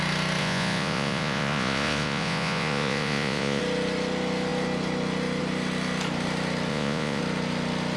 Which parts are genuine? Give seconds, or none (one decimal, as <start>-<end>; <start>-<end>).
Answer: 0.0-0.4; 3.6-6.7; 7.2-8.0